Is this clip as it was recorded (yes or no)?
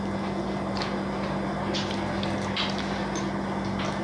yes